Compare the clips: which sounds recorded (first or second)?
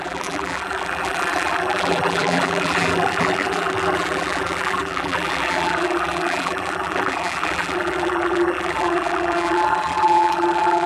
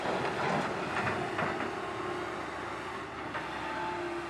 second